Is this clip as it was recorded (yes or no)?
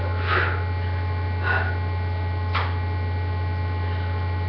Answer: yes